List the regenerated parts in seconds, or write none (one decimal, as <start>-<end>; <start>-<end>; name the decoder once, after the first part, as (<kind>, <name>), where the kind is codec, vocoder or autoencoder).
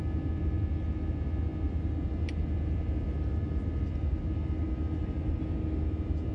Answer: none